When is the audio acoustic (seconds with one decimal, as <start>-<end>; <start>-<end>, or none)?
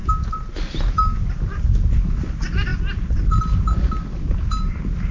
0.0-5.1